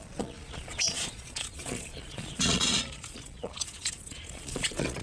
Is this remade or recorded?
remade